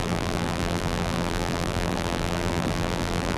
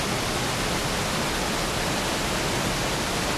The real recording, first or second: second